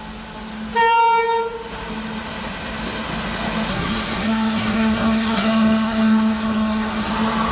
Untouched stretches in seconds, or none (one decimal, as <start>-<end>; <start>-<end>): 0.0-3.7; 7.1-7.5